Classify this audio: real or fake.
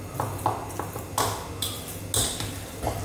real